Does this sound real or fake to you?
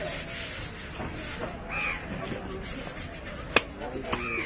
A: real